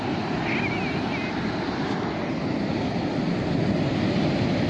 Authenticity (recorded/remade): recorded